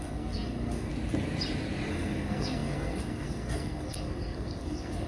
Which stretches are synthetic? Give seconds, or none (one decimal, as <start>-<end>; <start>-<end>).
0.0-0.9; 1.9-5.1